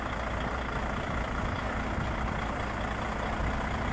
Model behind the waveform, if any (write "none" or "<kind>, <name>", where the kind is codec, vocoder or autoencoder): vocoder, BigVGAN v2